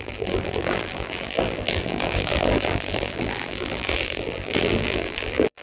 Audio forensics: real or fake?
fake